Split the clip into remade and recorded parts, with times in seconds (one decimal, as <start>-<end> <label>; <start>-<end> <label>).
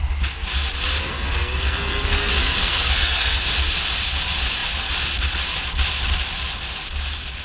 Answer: 0.0-1.0 recorded; 1.0-3.4 remade; 3.4-7.4 recorded